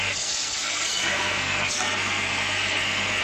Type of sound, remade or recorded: remade